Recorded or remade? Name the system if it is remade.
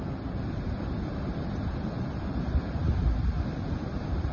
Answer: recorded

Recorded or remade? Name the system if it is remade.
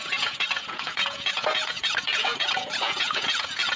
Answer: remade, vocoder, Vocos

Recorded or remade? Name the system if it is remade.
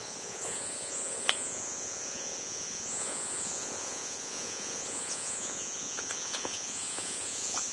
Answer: remade, vocoder, Vocos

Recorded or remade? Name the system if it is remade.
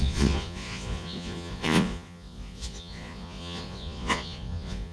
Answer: remade, vocoder, Vocos